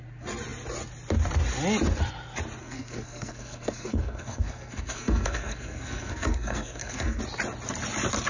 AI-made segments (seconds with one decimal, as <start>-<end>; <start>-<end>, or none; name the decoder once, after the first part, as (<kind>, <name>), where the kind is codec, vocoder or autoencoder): 2.6-7.2 (codec, SNAC)